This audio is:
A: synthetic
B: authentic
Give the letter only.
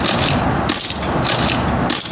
B